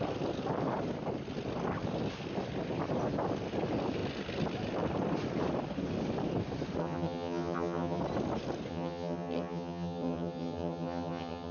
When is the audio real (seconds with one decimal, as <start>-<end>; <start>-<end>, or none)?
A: 0.0-6.8; 8.0-8.7